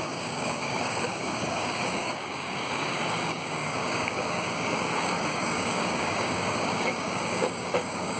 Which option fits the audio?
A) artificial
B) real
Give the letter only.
A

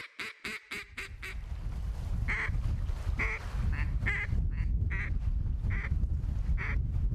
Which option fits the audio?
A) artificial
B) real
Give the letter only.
B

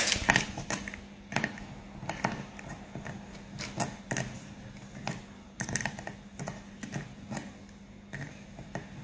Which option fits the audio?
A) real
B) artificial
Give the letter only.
A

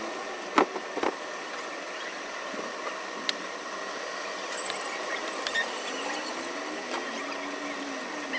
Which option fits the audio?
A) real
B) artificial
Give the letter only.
A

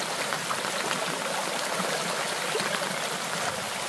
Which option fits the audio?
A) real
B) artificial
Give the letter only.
A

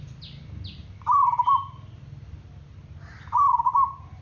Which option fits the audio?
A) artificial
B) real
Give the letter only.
B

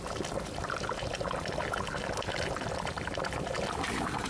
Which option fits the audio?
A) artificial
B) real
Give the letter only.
B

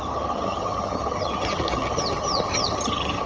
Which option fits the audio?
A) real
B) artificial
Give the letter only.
B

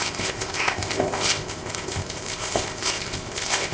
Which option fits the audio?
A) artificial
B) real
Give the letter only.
A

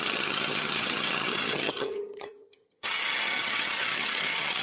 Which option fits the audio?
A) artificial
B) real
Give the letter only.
A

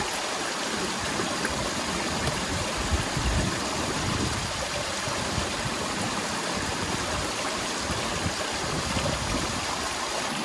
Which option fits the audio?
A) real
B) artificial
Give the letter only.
B